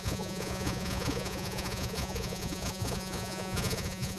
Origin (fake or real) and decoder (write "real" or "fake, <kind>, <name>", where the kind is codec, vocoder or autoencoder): fake, vocoder, Vocos